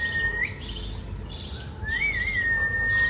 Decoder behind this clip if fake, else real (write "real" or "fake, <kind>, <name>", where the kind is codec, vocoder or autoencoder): real